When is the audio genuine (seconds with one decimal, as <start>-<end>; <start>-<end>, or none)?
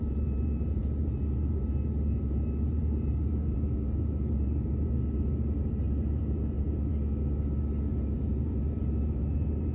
6.9-7.9